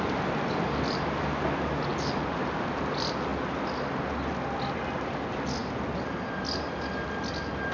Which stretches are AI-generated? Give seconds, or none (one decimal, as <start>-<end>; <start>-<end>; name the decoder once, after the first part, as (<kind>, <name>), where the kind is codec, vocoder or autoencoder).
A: none